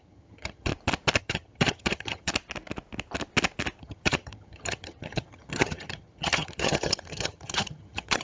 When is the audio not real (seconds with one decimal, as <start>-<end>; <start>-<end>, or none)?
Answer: 0.0-0.7; 1.2-2.3; 3.8-8.2